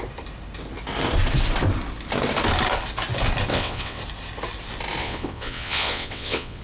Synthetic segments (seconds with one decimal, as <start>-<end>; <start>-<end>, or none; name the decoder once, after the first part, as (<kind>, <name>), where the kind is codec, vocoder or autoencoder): 3.5-4.0 (vocoder, WaveNeXt); 5.0-6.6